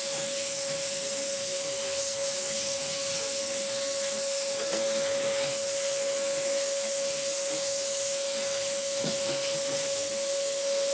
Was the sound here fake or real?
fake